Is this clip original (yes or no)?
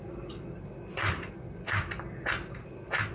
yes